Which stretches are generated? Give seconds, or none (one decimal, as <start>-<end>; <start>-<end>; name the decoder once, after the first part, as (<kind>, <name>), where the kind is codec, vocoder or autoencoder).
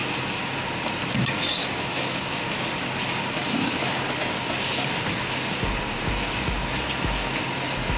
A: 1.6-2.3 (autoencoder, DAC-VAE); 3.4-4.0